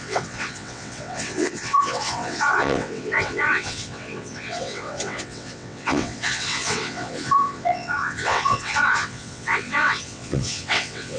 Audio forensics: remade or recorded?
remade